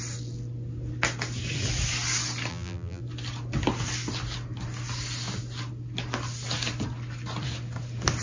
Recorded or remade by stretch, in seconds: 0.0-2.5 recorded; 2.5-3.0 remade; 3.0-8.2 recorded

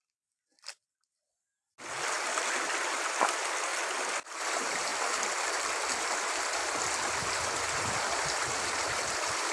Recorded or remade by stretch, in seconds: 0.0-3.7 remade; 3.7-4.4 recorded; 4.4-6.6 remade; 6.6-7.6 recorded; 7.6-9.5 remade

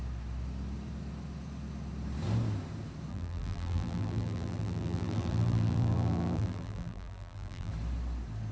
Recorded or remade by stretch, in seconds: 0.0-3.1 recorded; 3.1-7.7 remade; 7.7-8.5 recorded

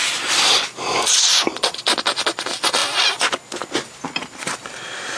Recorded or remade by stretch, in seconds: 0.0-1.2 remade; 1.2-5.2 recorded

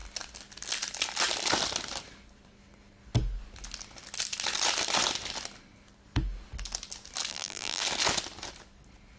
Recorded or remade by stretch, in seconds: 0.0-7.3 recorded; 7.3-7.8 remade; 7.8-9.2 recorded

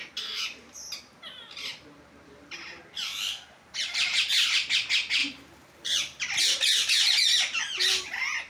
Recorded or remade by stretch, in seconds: 0.0-4.5 remade; 4.5-5.2 recorded; 5.2-7.6 remade; 7.6-8.5 recorded